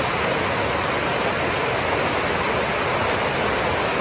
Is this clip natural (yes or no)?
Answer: yes